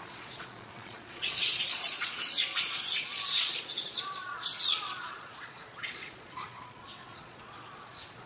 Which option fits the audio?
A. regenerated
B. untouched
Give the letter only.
A